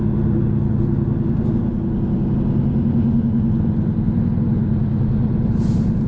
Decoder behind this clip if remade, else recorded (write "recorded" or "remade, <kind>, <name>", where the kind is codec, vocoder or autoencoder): recorded